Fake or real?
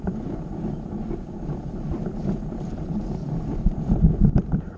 fake